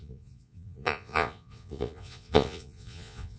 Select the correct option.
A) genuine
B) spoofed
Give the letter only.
B